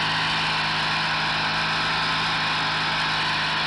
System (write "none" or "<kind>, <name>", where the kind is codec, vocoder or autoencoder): none